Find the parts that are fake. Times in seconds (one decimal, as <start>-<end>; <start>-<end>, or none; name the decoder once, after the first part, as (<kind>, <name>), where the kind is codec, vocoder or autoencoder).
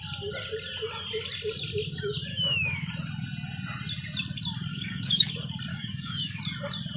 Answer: 2.3-2.9 (codec, DAC); 4.7-5.3; 5.7-6.4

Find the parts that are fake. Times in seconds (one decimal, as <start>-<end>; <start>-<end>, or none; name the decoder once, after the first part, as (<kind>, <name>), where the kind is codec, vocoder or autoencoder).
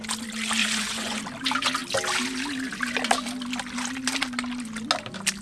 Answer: 0.6-1.2 (vocoder, Vocos)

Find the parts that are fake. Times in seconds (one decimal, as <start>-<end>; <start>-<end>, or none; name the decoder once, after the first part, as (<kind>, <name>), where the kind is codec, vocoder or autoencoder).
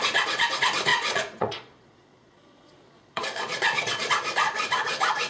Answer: 0.9-4.1 (vocoder, Vocos)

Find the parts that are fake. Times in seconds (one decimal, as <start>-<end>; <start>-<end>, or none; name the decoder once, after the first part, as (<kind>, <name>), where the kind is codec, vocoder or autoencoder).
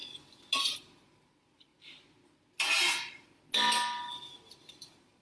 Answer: 0.7-1.7 (vocoder, BigVGAN v2); 4.1-5.2